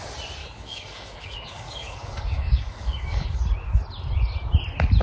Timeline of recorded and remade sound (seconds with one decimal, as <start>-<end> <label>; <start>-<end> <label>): 0.0-0.4 recorded; 0.4-3.4 remade; 3.4-5.0 recorded